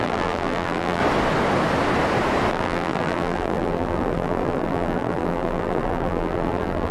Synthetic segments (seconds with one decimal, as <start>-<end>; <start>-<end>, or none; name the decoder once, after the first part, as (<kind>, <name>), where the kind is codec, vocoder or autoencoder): 0.0-1.0 (vocoder, BigVGAN v2); 2.5-6.9